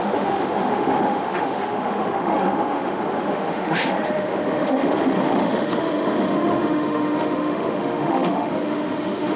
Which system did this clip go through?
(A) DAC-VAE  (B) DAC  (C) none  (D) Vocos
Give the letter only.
A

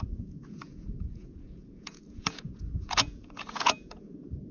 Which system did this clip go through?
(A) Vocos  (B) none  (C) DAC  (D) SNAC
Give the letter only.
A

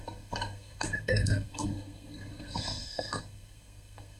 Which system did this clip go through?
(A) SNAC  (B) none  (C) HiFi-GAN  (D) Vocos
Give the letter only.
A